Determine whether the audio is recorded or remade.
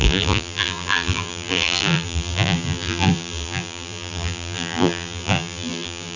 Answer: remade